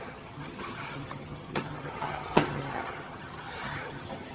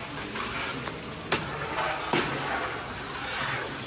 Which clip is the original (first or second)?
second